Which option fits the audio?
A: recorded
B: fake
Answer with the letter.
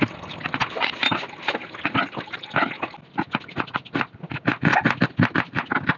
A